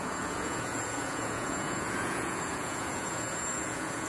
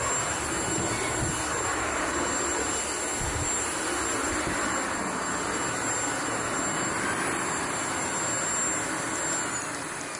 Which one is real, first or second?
second